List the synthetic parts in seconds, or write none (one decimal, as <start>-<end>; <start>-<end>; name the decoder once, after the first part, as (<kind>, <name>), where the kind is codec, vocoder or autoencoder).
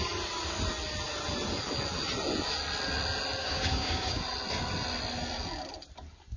3.4-4.2 (codec, DAC)